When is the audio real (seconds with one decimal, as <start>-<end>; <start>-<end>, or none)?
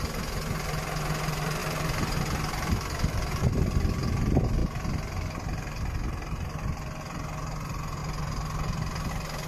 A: 0.0-1.6; 3.4-4.6; 7.0-9.5